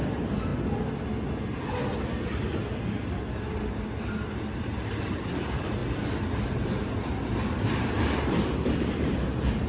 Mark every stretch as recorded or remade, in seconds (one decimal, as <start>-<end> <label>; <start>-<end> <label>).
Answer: 0.0-0.5 remade; 0.5-5.0 recorded; 5.0-5.8 remade; 5.8-6.4 recorded; 6.4-9.7 remade